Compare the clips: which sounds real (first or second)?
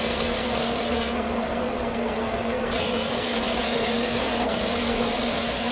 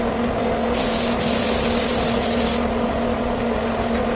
second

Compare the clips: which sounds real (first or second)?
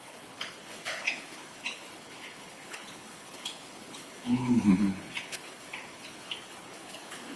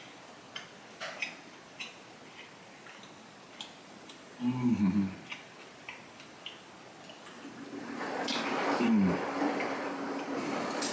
second